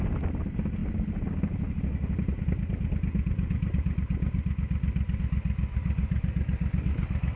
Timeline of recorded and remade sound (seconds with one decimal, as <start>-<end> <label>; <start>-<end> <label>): 0.0-7.4 recorded